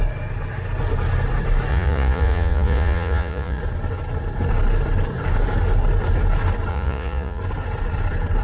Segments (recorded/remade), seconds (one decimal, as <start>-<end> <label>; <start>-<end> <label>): 0.0-1.7 recorded; 1.7-3.6 remade; 3.6-6.7 recorded; 6.7-7.4 remade; 7.4-8.4 recorded